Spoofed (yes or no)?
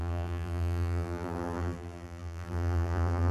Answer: yes